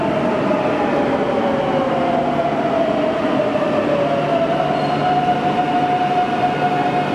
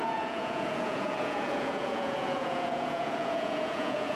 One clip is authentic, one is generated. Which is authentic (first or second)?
first